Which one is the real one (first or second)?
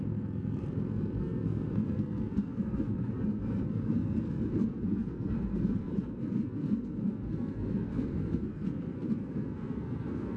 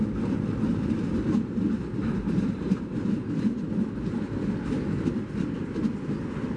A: second